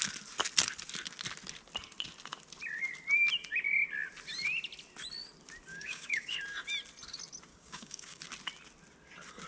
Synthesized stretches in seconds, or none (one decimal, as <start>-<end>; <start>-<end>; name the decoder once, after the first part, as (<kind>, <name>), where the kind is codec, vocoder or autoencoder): 5.7-6.4 (codec, DAC); 7.5-8.2